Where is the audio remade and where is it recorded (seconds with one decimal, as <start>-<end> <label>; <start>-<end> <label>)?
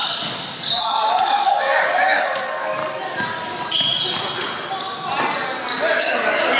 0.0-0.7 recorded; 0.7-2.8 remade; 2.8-6.0 recorded; 6.0-6.6 remade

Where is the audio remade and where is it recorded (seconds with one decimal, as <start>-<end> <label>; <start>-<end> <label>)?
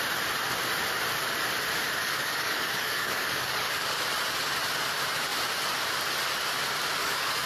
0.0-2.0 recorded; 2.0-4.0 remade; 4.0-7.0 recorded; 7.0-7.5 remade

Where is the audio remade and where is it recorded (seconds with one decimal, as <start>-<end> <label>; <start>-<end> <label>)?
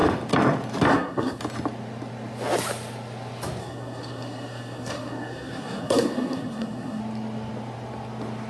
0.0-0.9 recorded; 0.9-1.4 remade; 1.4-3.6 recorded; 3.6-7.0 remade; 7.0-8.5 recorded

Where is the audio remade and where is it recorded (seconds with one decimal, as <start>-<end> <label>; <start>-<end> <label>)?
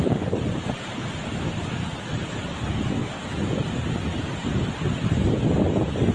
0.0-6.1 recorded